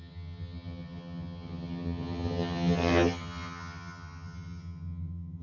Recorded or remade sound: remade